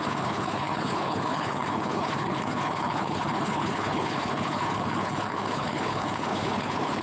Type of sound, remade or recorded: remade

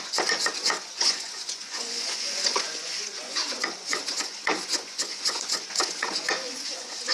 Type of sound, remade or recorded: remade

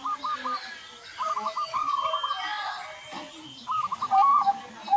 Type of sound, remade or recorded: recorded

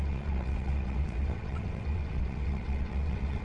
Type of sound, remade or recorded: remade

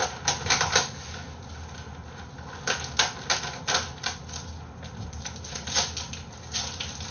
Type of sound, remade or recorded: recorded